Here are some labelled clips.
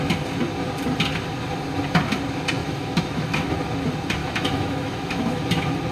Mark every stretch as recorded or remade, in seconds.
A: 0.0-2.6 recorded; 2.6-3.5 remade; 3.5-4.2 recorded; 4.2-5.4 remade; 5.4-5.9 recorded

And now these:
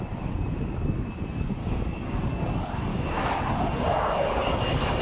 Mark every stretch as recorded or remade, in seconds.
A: 0.0-1.6 recorded; 1.6-2.2 remade; 2.2-2.9 recorded; 2.9-3.4 remade; 3.4-5.0 recorded